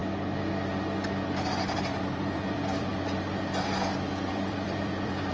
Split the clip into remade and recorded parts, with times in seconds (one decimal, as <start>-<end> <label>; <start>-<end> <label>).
0.0-1.8 recorded; 1.8-2.9 remade; 2.9-4.3 recorded; 4.3-5.3 remade